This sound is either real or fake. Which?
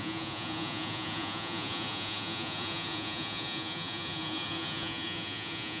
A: fake